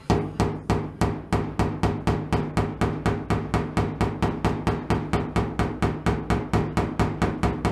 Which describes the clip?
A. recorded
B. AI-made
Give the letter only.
A